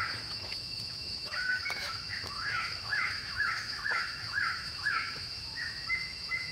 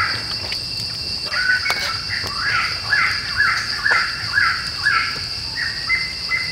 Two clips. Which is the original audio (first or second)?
second